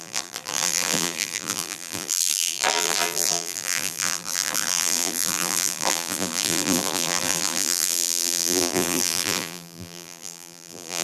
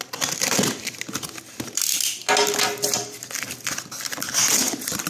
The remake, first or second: first